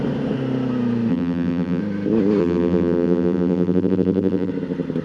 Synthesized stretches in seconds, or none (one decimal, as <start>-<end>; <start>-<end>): 1.1-1.8; 2.4-4.5